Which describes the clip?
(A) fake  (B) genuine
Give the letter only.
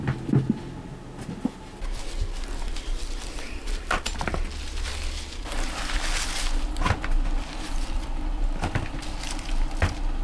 B